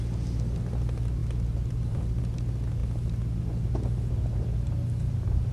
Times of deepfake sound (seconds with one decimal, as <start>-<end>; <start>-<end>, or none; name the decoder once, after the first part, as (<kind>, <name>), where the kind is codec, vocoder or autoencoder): 1.2-2.2 (vocoder, BigVGAN v2)